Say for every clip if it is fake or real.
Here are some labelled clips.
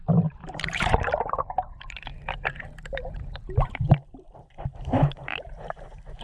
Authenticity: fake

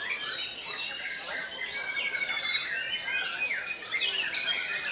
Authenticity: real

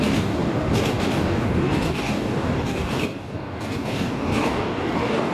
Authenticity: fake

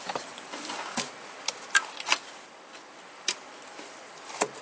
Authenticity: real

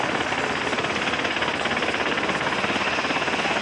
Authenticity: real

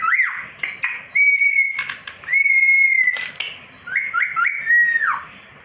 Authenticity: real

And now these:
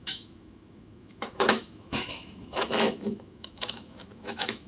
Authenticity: fake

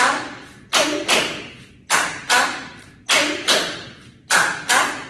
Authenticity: real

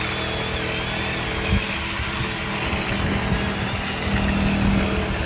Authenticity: real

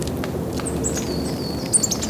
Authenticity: real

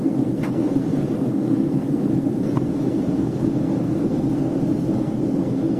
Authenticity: fake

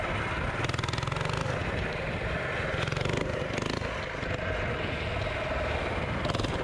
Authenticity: real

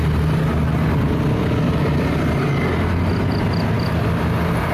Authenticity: real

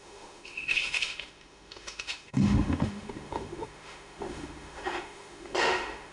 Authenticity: fake